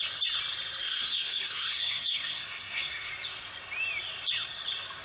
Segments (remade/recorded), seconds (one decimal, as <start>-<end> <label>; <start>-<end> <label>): 0.0-0.8 recorded; 0.8-3.1 remade; 3.1-5.0 recorded